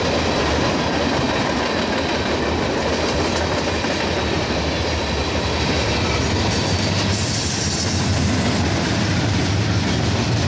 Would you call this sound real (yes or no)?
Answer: yes